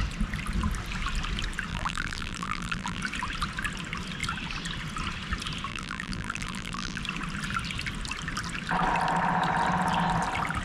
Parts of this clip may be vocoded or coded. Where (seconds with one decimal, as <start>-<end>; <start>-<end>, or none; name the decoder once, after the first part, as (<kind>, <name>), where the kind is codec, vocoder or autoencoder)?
1.7-3.0 (vocoder, BigVGAN v2); 5.7-7.0